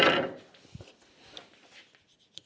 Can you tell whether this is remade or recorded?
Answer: recorded